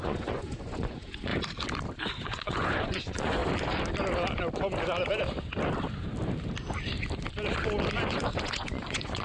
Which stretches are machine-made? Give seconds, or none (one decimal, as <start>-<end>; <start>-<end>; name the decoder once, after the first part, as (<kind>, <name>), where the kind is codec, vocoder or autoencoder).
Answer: 0.0-1.3 (vocoder, Vocos); 2.2-3.4; 8.4-9.2